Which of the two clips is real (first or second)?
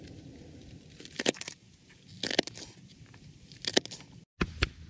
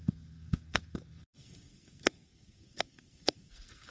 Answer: first